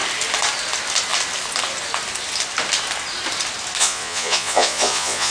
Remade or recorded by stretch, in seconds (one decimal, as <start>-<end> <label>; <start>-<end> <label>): 0.0-3.8 recorded; 3.8-5.3 remade